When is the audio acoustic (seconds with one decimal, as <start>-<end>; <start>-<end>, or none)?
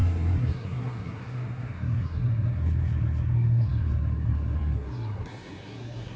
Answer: none